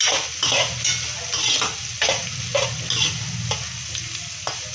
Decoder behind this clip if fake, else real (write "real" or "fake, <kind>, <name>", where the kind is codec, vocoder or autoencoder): real